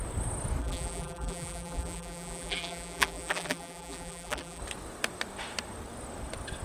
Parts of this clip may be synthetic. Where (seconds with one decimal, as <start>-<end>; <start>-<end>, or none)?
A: 0.6-4.6